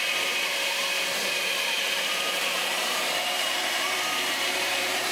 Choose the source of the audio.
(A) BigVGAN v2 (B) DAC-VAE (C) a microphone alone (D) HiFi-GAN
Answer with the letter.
A